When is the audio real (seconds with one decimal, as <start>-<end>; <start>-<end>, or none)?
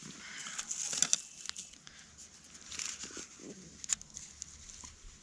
0.0-5.2